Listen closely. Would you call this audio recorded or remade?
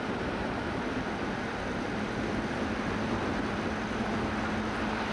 recorded